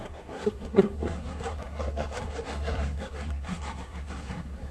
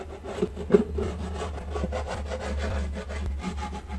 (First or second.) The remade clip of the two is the first